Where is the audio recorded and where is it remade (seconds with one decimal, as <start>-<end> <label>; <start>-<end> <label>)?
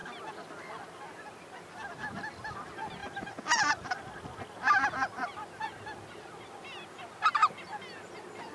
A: 0.0-3.0 recorded; 3.0-4.0 remade; 4.0-8.5 recorded